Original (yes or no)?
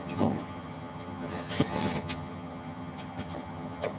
no